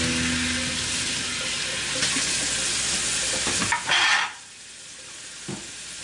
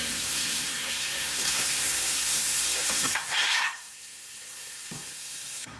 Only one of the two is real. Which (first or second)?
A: first